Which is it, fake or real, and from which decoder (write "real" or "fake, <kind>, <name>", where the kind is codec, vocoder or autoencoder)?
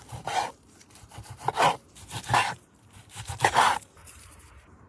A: fake, vocoder, BigVGAN v2